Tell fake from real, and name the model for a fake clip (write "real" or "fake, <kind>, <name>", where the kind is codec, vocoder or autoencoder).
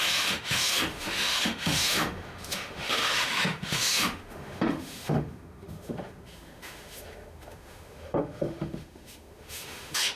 fake, autoencoder, DAC-VAE